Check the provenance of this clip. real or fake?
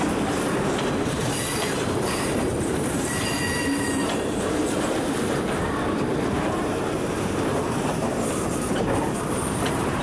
fake